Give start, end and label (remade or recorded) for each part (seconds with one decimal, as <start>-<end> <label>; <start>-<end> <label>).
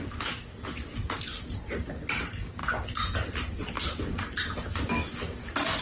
0.0-2.6 recorded; 2.6-5.8 remade